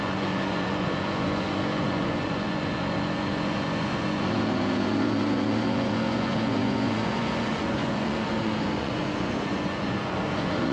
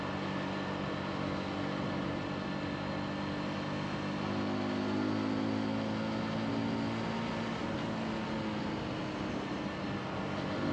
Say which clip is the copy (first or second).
first